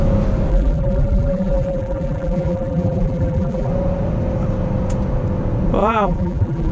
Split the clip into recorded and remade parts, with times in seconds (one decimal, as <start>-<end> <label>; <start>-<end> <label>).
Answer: 0.0-0.5 recorded; 0.5-3.7 remade; 3.7-5.8 recorded; 5.8-6.7 remade